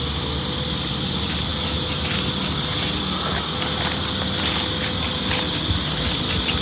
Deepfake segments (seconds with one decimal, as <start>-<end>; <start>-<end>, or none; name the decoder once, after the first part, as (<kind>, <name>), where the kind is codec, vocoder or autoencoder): none